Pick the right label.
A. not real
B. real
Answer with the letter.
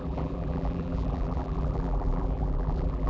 A